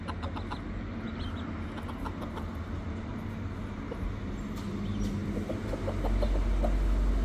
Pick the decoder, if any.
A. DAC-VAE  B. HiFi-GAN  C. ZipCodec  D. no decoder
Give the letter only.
D